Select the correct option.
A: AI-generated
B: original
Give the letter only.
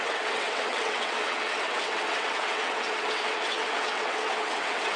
A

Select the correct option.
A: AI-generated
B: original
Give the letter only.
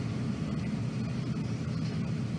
B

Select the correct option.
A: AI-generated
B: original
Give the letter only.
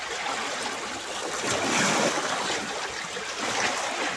B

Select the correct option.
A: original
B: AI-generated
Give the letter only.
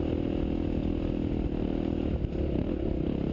A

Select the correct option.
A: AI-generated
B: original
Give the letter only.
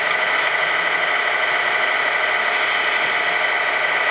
B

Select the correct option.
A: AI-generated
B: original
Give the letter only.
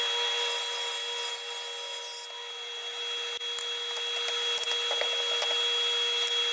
B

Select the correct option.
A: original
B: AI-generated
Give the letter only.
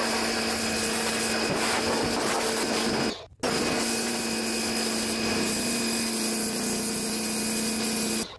A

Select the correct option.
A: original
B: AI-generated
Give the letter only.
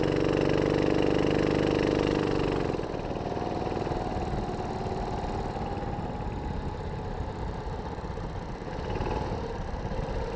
A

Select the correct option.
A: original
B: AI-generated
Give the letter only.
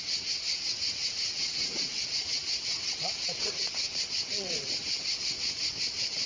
B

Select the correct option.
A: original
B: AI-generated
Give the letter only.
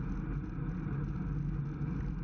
A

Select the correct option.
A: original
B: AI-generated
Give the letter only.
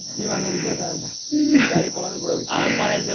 B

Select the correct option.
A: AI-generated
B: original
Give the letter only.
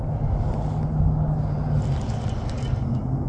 B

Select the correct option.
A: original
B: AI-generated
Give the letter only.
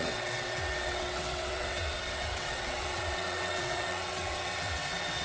B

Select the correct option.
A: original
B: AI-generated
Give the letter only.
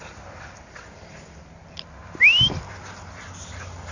A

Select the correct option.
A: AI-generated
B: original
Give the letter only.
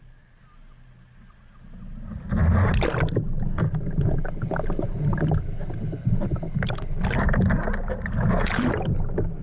B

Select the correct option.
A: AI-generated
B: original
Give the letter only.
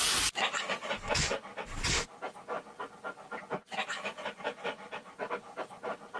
B